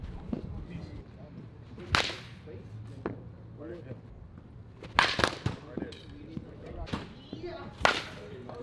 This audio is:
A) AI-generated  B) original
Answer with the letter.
B